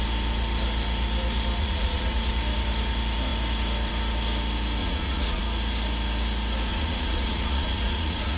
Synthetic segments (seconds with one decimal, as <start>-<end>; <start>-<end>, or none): 1.6-2.3; 4.8-5.4; 6.7-8.4